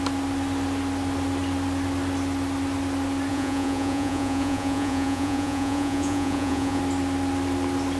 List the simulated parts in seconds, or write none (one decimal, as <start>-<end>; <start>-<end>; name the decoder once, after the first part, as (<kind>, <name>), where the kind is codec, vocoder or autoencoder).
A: 3.3-6.8 (vocoder, Vocos)